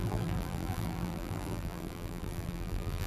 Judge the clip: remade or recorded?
remade